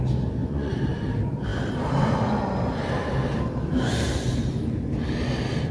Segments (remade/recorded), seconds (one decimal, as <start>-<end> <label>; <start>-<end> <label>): 0.0-0.4 recorded; 0.4-0.9 remade; 0.9-5.7 recorded